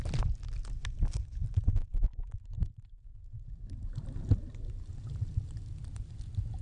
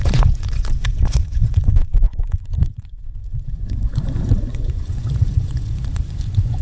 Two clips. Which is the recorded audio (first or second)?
first